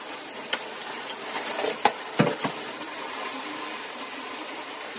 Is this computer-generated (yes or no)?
no